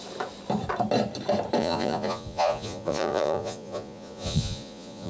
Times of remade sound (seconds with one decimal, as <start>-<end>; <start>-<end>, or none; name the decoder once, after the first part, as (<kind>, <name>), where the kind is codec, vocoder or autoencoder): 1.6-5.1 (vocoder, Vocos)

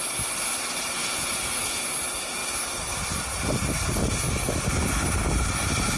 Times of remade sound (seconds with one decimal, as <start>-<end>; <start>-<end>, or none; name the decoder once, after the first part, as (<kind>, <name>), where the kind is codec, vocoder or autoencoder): 1.0-1.8 (vocoder, Vocos)

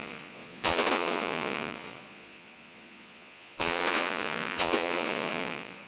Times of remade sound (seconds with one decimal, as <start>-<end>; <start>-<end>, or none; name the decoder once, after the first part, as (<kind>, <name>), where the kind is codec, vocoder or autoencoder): 0.0-5.9 (vocoder, Vocos)

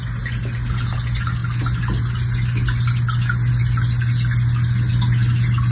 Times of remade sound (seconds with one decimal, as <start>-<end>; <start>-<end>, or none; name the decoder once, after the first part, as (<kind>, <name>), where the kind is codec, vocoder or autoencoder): none

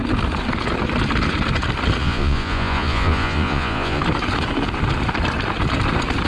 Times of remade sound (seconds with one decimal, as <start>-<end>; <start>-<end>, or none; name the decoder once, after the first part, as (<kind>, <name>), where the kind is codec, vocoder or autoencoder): 2.0-4.0 (vocoder, Vocos)

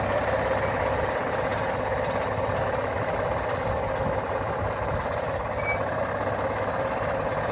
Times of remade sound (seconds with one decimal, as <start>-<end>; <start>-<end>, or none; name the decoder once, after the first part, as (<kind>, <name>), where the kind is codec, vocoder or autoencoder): none

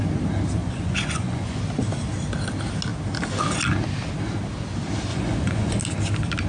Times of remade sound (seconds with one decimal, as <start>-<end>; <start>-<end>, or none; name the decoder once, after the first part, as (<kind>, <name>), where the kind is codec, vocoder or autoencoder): 0.6-1.6 (vocoder, Vocos); 5.1-5.8